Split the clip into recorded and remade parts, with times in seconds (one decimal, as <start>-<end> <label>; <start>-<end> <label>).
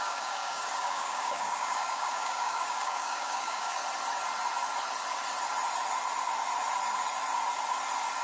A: 0.0-3.8 remade; 3.8-8.2 recorded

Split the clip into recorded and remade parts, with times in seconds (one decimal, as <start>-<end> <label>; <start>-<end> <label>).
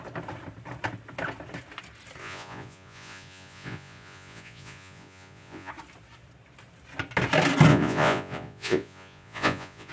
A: 0.0-2.2 recorded; 2.2-5.7 remade; 5.7-7.7 recorded; 7.7-9.9 remade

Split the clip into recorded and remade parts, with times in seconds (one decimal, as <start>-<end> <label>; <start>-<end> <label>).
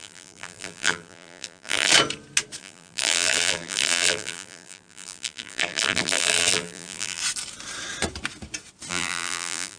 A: 0.0-1.9 remade; 1.9-2.6 recorded; 2.6-7.2 remade; 7.2-8.9 recorded; 8.9-9.8 remade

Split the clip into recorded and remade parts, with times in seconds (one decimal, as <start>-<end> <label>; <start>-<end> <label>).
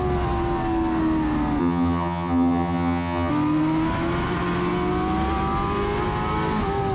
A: 0.0-1.6 recorded; 1.6-3.3 remade; 3.3-6.9 recorded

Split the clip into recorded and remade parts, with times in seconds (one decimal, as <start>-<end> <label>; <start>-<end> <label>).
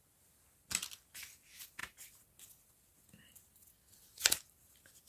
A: 0.0-5.1 recorded